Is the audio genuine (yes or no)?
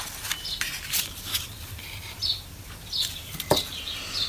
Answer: yes